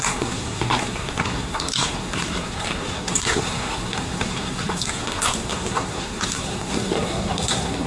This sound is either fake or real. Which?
fake